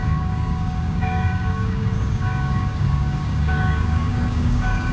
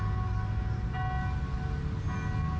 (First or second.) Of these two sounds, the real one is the second